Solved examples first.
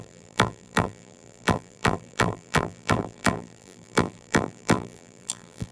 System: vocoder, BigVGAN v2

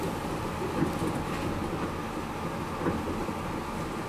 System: none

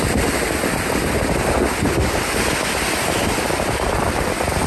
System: none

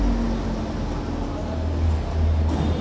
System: none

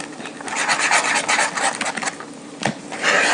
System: none